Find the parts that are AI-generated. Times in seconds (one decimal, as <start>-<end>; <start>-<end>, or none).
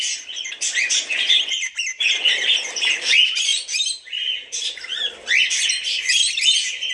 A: 1.1-1.7